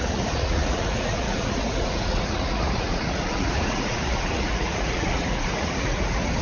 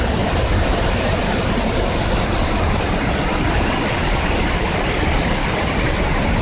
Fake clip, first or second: first